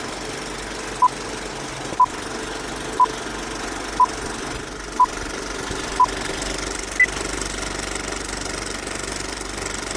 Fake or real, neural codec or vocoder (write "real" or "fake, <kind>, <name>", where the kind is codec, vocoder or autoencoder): real